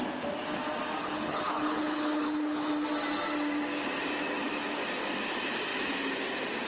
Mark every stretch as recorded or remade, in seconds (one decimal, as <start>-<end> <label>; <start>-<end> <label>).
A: 0.0-1.0 recorded; 1.0-2.7 remade; 2.7-6.7 recorded